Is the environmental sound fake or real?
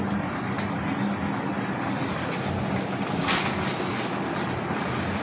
real